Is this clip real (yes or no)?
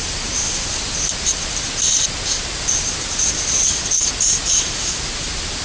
yes